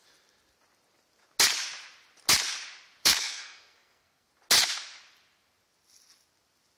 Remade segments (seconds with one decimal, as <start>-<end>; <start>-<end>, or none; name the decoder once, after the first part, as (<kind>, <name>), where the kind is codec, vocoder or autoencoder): 3.0-4.3 (codec, SNAC)